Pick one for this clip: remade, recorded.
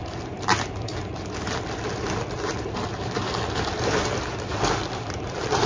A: recorded